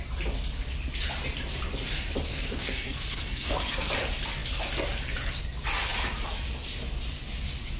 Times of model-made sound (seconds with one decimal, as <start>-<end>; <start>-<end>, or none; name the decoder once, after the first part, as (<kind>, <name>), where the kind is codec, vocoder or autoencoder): 2.3-3.9 (codec, SNAC)